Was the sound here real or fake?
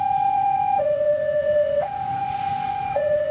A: fake